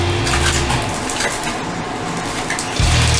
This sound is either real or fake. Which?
real